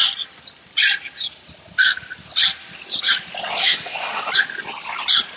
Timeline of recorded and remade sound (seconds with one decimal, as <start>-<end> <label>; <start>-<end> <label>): 0.0-3.6 recorded; 3.6-4.3 remade; 4.3-5.4 recorded

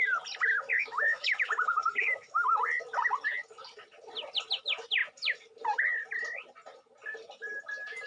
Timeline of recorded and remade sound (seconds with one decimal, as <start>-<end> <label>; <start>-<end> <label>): 0.0-0.7 recorded; 0.7-2.6 remade; 2.6-8.1 recorded